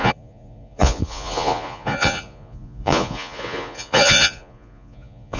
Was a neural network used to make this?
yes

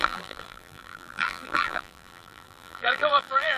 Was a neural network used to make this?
yes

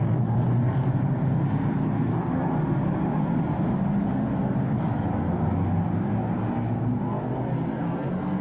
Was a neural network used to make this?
no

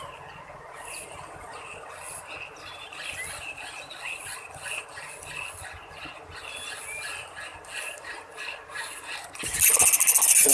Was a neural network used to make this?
no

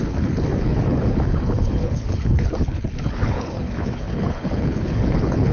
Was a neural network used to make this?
yes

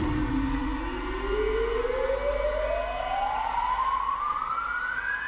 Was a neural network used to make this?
no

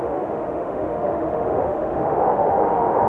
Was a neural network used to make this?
yes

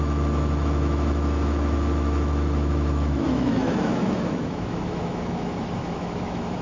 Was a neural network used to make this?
yes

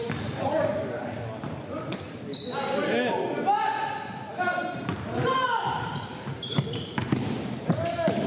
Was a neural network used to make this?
no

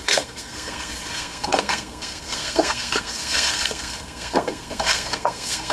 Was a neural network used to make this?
yes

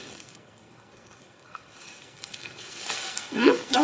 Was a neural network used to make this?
yes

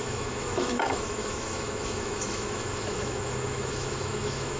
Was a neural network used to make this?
yes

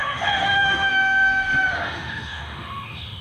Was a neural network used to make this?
yes